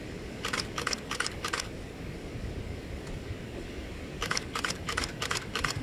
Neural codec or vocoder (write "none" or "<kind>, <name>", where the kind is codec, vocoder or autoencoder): codec, DAC